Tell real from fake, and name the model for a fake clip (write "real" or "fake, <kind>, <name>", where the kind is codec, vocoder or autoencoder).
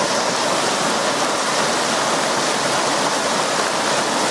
real